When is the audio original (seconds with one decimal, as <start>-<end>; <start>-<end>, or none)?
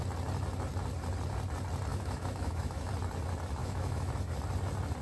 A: 0.0-1.9; 2.9-3.6; 4.1-5.0